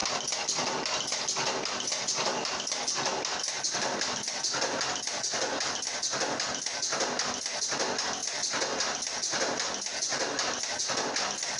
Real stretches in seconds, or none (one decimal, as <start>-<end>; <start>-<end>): 0.0-11.6